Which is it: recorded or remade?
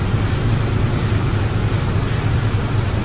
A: remade